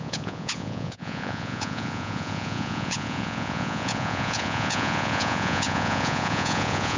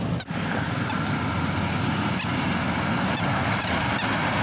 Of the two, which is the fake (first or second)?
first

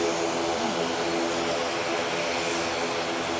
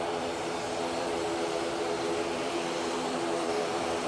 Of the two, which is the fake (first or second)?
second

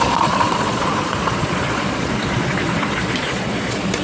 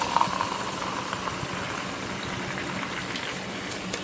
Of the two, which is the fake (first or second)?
first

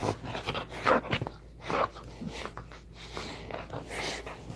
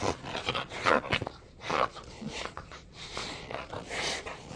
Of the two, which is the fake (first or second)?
second